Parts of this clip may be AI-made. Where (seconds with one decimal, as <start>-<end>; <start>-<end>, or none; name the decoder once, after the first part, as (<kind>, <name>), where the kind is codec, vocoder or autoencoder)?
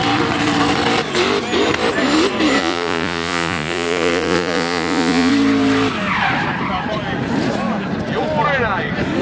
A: 2.6-5.3 (vocoder, Vocos)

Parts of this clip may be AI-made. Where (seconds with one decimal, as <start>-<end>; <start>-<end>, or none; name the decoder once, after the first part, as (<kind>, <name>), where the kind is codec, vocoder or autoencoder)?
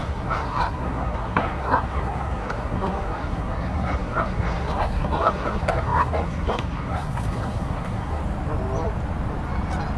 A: 0.0-8.2 (codec, SNAC)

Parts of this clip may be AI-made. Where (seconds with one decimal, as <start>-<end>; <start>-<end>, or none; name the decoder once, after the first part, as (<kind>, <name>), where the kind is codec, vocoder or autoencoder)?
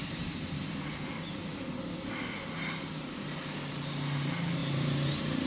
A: 0.0-0.6 (vocoder, BigVGAN v2); 4.6-5.5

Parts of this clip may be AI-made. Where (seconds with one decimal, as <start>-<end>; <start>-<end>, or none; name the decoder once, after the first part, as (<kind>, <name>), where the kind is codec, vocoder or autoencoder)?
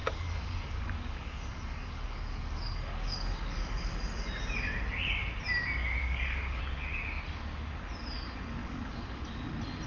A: 0.0-4.0 (codec, DAC); 6.0-6.6; 8.6-9.2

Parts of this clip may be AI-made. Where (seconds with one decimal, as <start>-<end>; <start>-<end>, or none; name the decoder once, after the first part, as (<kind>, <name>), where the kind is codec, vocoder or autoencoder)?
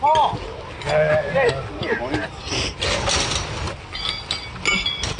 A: none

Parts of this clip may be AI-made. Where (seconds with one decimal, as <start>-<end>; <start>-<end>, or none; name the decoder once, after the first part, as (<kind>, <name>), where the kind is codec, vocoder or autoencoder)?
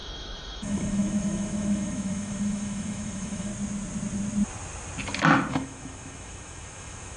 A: 0.0-3.5 (autoencoder, DAC-VAE); 5.5-7.2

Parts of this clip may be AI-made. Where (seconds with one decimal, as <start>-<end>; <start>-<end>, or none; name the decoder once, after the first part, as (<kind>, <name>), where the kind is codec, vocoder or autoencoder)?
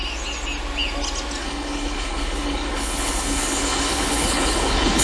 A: 1.4-5.0 (codec, HILCodec)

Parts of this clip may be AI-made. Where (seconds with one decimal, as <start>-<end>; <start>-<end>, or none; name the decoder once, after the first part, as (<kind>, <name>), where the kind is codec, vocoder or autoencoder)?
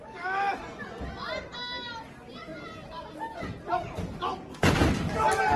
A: none